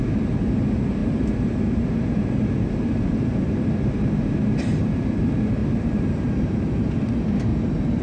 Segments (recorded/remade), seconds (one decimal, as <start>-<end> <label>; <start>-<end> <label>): 0.0-1.0 recorded; 1.0-4.9 remade; 4.9-5.6 recorded; 5.6-6.3 remade; 6.3-7.5 recorded; 7.5-8.0 remade